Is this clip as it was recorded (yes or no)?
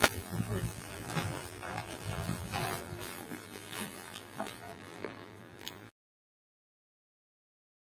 no